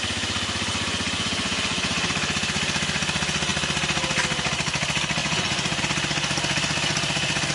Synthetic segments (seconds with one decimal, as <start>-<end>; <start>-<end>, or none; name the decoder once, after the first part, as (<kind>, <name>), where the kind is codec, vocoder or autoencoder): 0.7-2.1 (vocoder, Vocos); 5.2-5.8